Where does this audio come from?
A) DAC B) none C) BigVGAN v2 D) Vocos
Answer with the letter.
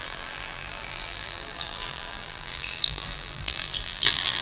C